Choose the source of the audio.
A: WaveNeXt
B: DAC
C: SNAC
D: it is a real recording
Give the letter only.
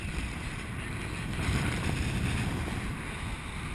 D